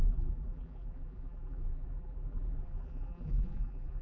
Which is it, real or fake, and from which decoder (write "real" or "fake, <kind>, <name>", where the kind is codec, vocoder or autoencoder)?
fake, vocoder, BigVGAN v2